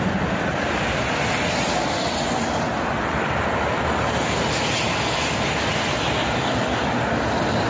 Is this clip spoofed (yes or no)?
no